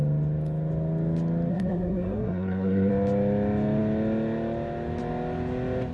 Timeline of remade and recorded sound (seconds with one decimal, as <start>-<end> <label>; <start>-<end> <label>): 0.0-1.5 recorded; 1.5-2.9 remade; 2.9-5.9 recorded